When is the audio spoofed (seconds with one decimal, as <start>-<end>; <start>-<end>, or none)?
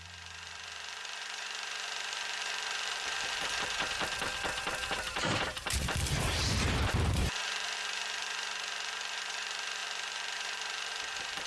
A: 0.0-11.5